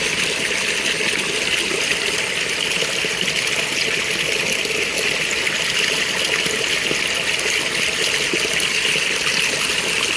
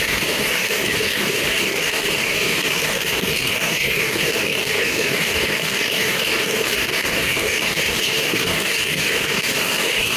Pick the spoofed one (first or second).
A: second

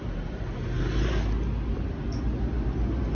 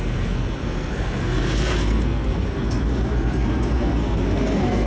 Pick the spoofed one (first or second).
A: second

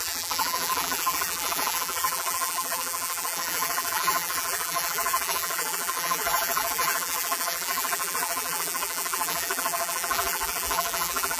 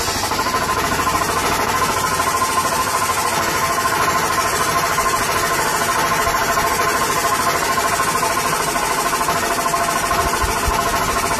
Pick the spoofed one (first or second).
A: first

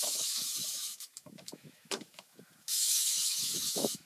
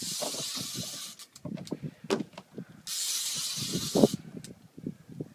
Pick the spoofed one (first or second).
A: first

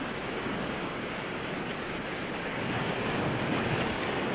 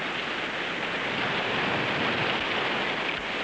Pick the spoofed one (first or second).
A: first